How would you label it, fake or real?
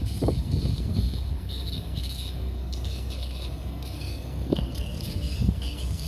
fake